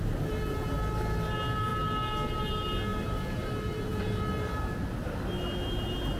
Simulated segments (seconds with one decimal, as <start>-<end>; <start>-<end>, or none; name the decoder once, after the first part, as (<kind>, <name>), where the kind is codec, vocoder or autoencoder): 2.9-4.9 (vocoder, BigVGAN v2)